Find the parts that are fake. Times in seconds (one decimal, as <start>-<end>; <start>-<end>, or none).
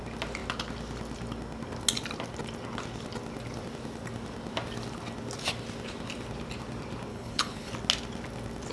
7.1-7.7